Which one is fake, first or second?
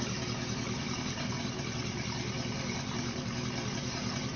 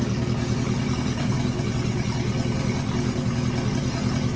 first